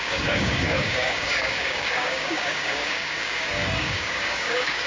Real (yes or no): no